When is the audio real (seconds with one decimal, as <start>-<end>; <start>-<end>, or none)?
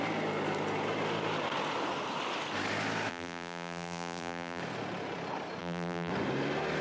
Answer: 0.0-3.1; 4.6-5.6; 6.1-6.8